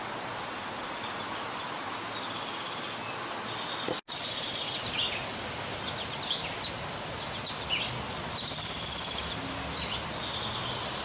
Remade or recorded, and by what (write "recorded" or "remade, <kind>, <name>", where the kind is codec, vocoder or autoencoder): recorded